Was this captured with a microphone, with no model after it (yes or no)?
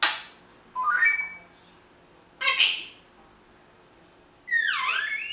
yes